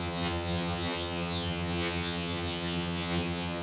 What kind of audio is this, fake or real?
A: fake